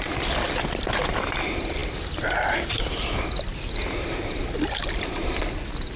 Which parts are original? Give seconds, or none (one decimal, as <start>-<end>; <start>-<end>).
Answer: 0.0-3.8; 4.4-6.0